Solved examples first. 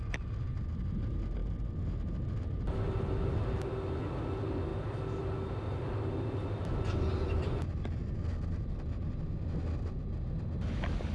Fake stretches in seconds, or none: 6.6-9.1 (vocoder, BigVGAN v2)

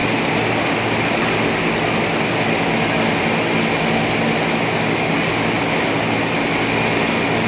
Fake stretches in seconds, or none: 0.0-4.5 (vocoder, BigVGAN v2)

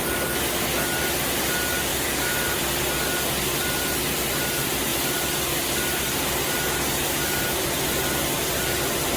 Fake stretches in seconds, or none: none

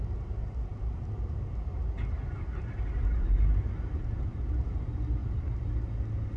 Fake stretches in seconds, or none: none

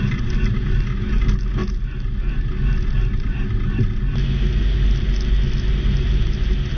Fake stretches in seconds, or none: none

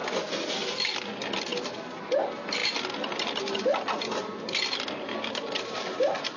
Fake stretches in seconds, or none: none

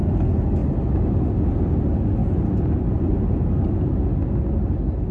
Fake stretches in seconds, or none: 2.2-3.7 (vocoder, BigVGAN v2)